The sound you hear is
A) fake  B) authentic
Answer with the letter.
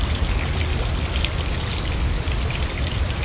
B